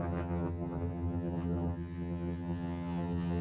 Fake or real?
fake